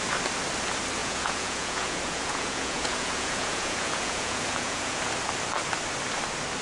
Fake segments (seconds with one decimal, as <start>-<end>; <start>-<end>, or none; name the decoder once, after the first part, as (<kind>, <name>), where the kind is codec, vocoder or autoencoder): 1.0-5.0 (vocoder, Vocos)